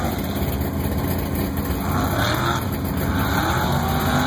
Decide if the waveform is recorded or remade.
recorded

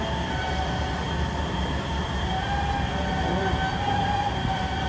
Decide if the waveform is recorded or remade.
recorded